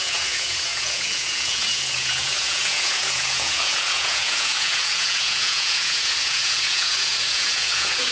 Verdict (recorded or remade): remade